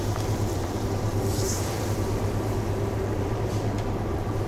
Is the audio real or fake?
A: fake